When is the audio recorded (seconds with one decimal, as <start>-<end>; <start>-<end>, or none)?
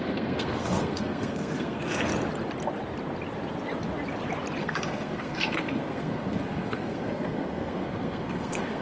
2.1-4.6